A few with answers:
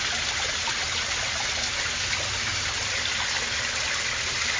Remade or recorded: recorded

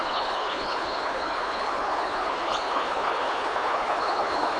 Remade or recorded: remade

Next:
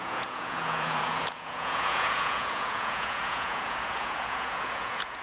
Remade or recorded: remade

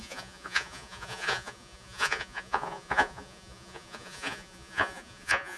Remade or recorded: remade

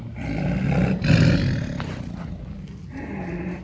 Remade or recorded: recorded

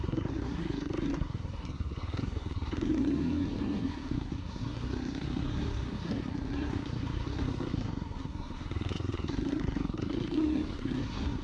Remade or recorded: remade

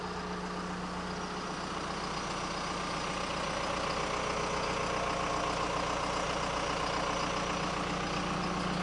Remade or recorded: recorded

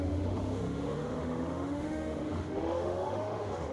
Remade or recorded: remade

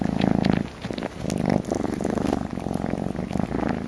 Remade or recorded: recorded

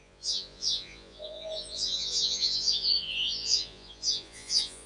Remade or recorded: remade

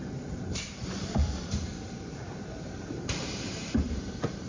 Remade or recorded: remade